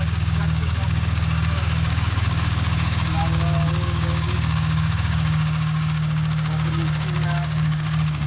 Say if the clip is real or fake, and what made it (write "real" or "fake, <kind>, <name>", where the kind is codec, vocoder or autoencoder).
fake, codec, DAC